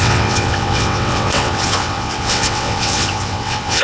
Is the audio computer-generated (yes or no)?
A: yes